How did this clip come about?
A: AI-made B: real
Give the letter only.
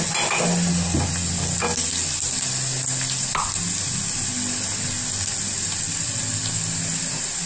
B